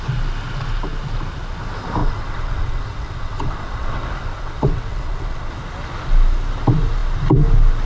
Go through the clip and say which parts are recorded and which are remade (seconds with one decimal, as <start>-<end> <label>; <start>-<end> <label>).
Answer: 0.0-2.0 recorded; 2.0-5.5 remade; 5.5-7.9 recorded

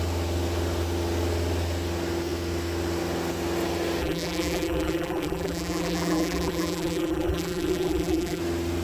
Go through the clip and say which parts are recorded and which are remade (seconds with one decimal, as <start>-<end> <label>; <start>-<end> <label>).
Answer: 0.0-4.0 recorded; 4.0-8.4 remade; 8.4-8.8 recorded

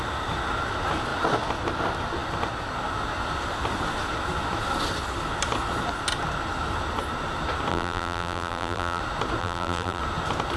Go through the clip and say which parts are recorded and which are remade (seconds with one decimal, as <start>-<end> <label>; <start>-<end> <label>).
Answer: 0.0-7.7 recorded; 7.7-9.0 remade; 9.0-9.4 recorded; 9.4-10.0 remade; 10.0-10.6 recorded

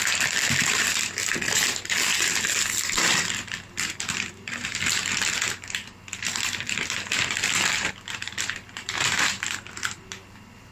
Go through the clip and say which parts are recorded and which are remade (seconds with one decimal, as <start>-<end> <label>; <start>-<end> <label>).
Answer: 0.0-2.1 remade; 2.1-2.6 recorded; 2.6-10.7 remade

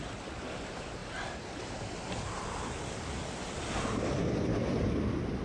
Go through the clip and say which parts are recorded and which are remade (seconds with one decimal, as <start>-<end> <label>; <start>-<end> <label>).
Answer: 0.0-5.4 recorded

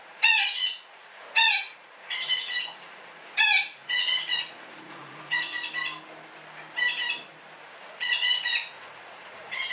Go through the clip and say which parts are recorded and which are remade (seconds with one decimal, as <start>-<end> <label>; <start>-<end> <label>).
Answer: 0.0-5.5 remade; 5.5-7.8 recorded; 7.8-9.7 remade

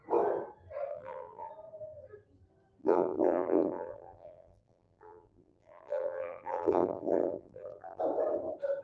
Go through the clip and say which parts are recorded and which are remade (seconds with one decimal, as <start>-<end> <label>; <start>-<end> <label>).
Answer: 0.0-0.9 recorded; 0.9-1.5 remade; 1.5-2.8 recorded; 2.8-8.0 remade; 8.0-8.8 recorded